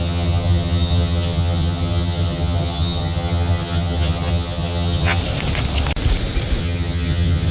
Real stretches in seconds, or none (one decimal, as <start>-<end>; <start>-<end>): 5.2-6.6